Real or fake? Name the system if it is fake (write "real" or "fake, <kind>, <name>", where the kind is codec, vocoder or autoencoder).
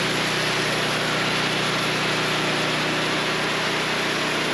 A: real